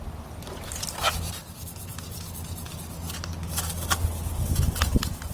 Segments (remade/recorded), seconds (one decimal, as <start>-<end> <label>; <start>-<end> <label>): 0.0-5.3 recorded